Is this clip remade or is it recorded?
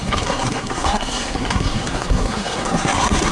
remade